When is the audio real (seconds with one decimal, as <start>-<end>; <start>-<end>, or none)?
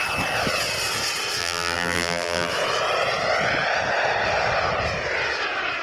0.0-1.4; 2.5-5.8